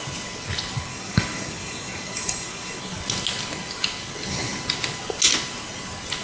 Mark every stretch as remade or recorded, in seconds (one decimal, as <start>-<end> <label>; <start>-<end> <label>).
0.0-0.9 recorded; 0.9-2.8 remade; 2.8-6.2 recorded